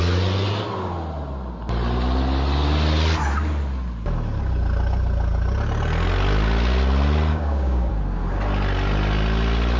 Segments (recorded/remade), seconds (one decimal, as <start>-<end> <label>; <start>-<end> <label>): 0.0-7.3 recorded; 7.3-7.9 remade; 7.9-9.8 recorded